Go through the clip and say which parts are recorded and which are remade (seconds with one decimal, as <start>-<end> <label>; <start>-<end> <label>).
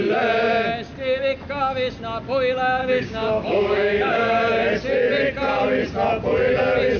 0.0-2.8 recorded; 2.8-4.4 remade; 4.4-7.0 recorded